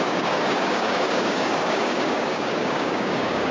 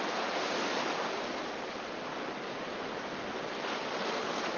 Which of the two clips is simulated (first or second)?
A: first